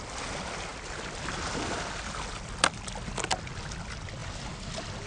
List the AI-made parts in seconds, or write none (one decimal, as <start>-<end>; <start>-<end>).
none